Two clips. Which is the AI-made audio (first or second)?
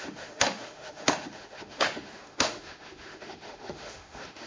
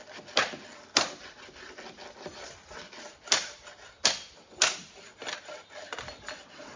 first